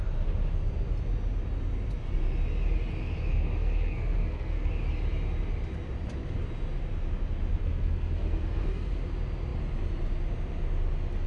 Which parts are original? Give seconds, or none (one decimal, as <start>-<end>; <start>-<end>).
0.0-3.3; 4.7-7.6; 8.9-11.3